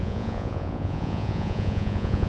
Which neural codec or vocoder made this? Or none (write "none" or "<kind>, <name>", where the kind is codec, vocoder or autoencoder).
vocoder, Vocos